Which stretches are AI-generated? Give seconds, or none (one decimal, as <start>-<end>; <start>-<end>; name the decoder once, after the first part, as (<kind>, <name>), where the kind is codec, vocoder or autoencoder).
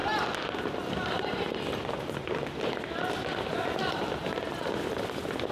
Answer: none